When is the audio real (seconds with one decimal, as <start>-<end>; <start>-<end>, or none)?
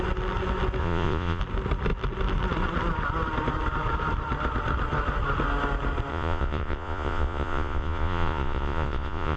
0.0-0.8; 1.4-6.1